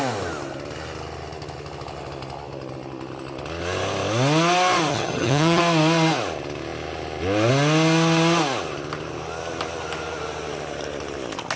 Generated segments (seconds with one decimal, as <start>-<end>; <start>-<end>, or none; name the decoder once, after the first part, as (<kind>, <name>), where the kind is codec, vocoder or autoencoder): 4.9-5.6 (vocoder, HiFi-GAN)